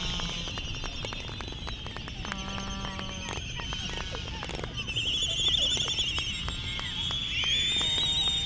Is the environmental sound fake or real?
real